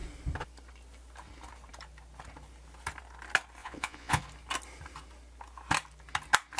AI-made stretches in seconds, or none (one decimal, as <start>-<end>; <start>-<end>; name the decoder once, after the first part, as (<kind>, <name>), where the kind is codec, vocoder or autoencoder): 3.6-4.2 (vocoder, Vocos)